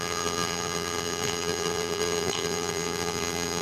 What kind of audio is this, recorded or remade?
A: remade